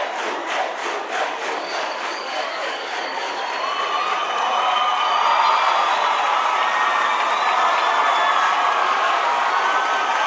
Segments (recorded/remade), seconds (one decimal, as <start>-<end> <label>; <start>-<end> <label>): 0.0-0.8 recorded; 0.8-3.4 remade; 3.4-8.8 recorded; 8.8-9.5 remade; 9.5-10.3 recorded